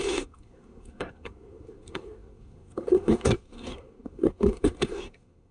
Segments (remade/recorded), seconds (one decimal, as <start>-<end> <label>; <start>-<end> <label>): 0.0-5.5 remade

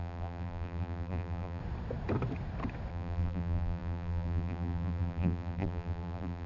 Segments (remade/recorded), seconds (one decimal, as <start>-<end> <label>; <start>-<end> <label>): 0.0-1.6 remade; 1.6-2.9 recorded; 2.9-6.5 remade

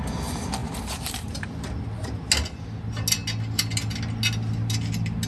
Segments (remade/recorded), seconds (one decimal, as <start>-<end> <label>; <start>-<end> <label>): 0.0-0.6 recorded; 0.6-1.5 remade; 1.5-5.3 recorded

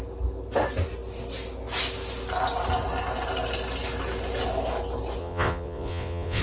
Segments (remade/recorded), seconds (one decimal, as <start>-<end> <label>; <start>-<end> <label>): 0.0-5.2 recorded; 5.2-6.4 remade

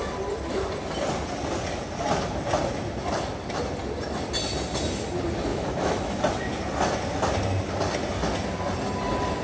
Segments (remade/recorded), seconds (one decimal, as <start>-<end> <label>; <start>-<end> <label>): 0.0-5.5 recorded; 5.5-6.2 remade; 6.2-9.4 recorded

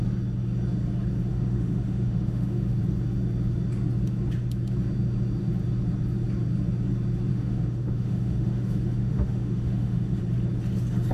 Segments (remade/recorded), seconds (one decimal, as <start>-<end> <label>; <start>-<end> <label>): 0.0-1.3 recorded; 1.3-2.8 remade; 2.8-7.3 recorded; 7.3-10.2 remade; 10.2-11.1 recorded

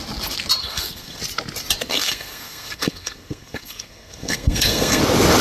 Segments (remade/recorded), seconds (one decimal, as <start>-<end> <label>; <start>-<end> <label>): 0.0-0.6 recorded; 0.6-1.2 remade; 1.2-1.9 recorded; 1.9-5.0 remade; 5.0-5.4 recorded

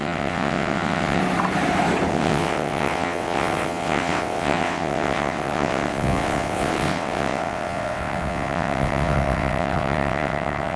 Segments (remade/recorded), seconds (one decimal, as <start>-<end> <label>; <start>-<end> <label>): 0.0-1.2 remade; 1.2-2.1 recorded; 2.1-10.8 remade